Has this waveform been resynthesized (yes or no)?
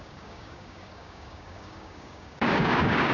yes